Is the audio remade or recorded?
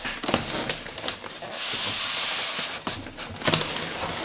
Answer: recorded